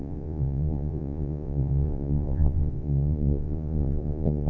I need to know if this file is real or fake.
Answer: fake